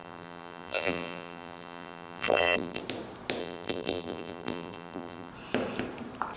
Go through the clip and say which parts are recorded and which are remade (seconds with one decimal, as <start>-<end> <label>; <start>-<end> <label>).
0.0-2.8 remade; 2.8-3.4 recorded; 3.4-5.3 remade; 5.3-6.4 recorded